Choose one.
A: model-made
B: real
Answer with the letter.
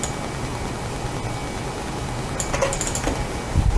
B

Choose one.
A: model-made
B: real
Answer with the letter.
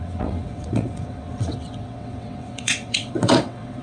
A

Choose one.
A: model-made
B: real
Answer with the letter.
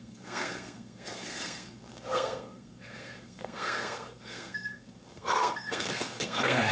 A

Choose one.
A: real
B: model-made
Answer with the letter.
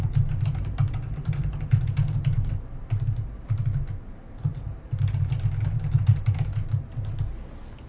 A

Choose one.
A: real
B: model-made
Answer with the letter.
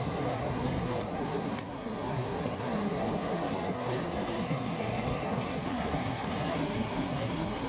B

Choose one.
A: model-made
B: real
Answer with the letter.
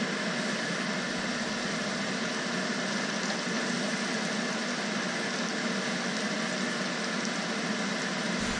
B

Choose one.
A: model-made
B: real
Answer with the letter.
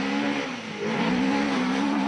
B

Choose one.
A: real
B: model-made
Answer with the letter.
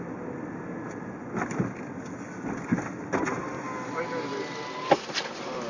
A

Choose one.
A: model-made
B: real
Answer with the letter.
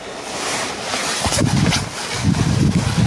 B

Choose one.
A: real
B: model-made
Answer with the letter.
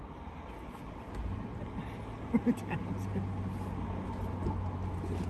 A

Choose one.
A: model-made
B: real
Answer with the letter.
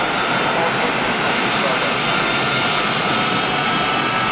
B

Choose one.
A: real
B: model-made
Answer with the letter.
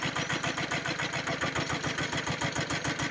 A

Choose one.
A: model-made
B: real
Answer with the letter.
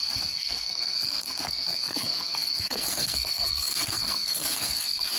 A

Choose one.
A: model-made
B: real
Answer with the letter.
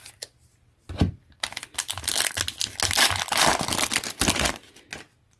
B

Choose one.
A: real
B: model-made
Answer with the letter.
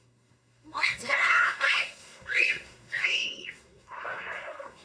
B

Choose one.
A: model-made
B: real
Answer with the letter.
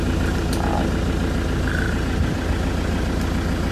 B